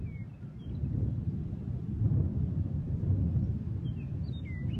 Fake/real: real